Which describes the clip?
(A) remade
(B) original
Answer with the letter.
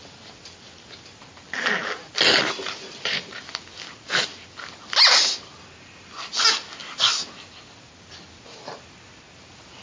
B